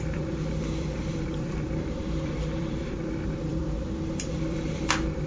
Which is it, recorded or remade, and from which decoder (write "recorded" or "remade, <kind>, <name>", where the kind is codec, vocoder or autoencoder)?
remade, vocoder, BigVGAN v2